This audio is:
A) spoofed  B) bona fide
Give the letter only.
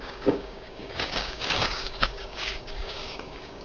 A